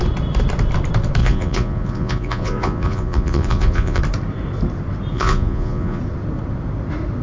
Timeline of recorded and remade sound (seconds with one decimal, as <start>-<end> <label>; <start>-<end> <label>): 0.0-1.2 recorded; 1.2-4.0 remade; 4.0-5.1 recorded; 5.1-6.0 remade; 6.0-7.2 recorded